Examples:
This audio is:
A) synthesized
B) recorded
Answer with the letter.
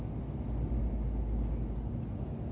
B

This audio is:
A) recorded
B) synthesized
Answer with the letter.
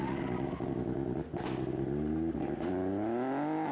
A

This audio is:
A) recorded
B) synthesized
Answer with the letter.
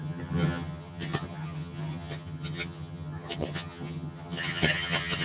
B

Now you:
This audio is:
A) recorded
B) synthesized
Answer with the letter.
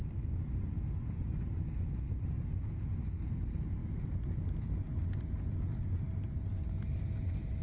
A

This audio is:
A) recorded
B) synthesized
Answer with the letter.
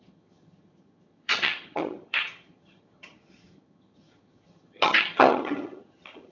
B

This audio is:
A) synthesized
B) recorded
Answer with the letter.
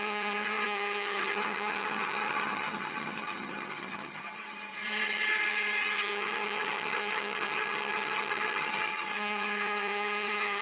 A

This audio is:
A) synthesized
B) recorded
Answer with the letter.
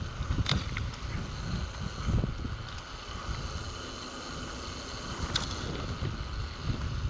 B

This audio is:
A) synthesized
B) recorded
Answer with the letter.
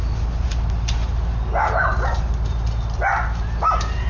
B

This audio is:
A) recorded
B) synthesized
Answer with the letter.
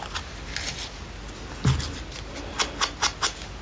A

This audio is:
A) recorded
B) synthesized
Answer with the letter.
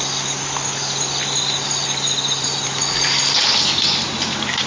A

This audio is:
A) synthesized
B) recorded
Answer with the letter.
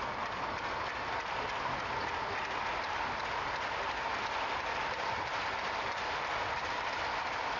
B